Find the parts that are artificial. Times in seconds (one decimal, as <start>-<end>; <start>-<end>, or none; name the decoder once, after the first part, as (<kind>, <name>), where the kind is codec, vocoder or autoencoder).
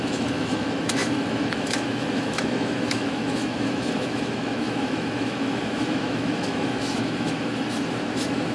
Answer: 0.0-8.5 (autoencoder, DAC-VAE)